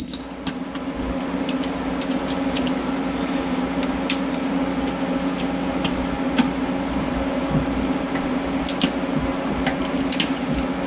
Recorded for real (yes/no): yes